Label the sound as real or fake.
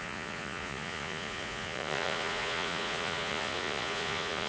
fake